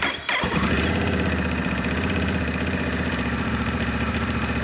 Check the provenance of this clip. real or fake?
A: fake